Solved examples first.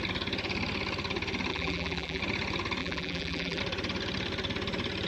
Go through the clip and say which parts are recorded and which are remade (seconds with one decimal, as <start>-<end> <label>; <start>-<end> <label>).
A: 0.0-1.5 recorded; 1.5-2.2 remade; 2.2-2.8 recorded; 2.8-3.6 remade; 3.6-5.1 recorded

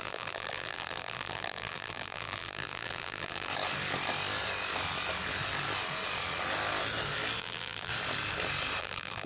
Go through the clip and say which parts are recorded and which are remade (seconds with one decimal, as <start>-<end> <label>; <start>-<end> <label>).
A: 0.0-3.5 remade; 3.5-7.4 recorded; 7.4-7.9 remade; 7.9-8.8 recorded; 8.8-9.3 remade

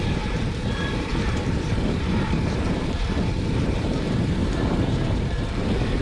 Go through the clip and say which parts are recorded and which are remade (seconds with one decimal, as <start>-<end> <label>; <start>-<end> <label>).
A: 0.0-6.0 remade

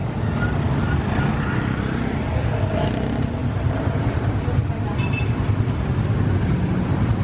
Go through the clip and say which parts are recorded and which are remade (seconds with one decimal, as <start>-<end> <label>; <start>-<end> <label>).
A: 0.0-3.4 recorded; 3.4-4.0 remade; 4.0-7.2 recorded

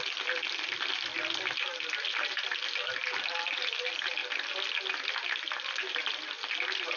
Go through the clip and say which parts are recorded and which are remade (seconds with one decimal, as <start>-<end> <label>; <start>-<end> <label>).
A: 0.0-7.0 recorded